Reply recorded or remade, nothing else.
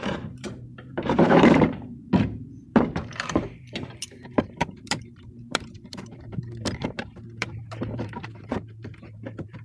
remade